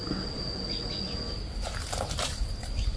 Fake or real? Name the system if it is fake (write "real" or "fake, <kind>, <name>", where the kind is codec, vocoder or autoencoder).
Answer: real